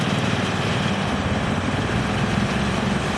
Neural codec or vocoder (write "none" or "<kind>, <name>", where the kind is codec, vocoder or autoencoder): none